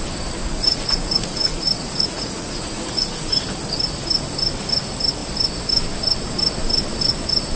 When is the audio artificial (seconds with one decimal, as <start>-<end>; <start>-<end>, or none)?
0.4-3.4